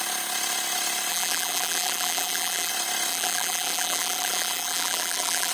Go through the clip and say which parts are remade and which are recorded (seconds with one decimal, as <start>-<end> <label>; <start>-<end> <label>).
0.0-1.1 recorded; 1.1-2.7 remade; 2.7-3.1 recorded; 3.1-5.5 remade